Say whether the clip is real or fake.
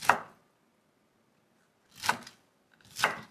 real